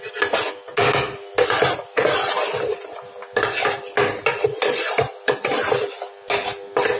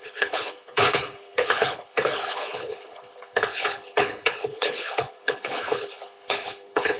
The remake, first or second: second